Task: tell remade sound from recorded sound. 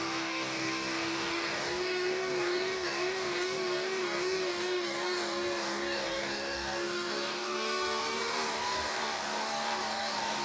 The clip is remade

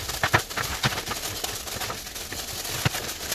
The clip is recorded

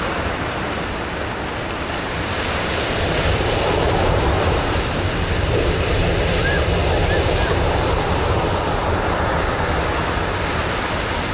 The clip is recorded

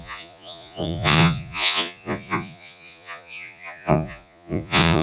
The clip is remade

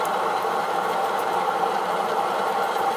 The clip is remade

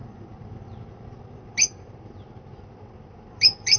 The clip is recorded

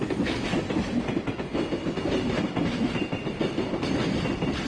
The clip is recorded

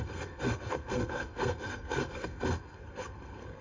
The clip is remade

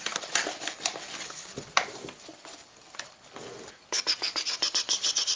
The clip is recorded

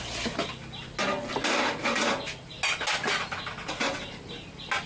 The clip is recorded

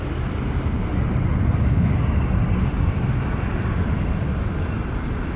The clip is recorded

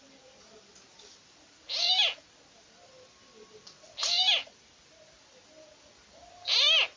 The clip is recorded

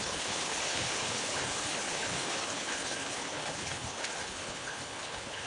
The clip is remade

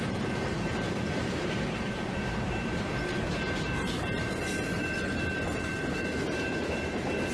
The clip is remade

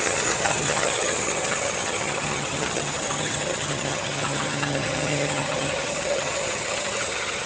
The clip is remade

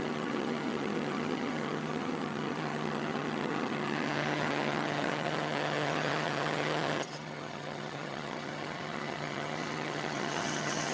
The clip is remade